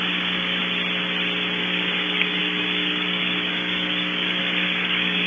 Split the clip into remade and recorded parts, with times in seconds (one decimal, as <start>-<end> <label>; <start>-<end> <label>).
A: 0.0-0.6 remade; 0.6-1.6 recorded; 1.6-5.3 remade